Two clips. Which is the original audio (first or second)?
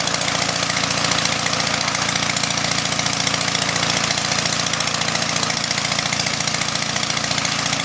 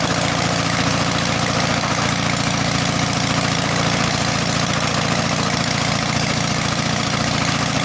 first